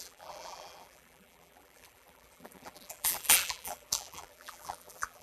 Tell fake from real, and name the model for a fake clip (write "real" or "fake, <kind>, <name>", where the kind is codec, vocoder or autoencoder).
fake, vocoder, BigVGAN v2